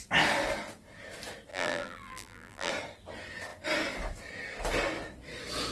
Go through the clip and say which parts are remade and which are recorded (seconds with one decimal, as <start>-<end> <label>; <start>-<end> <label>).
0.0-1.5 recorded; 1.5-2.7 remade; 2.7-5.7 recorded